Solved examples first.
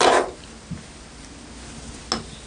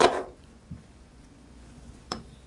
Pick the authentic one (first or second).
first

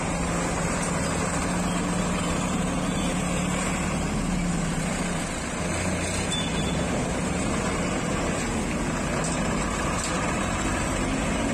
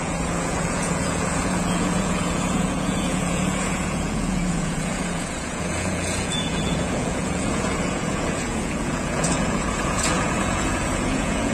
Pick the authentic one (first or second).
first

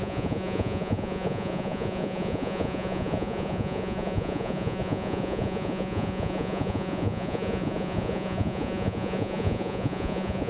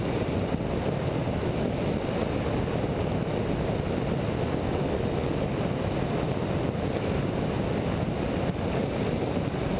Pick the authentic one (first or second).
second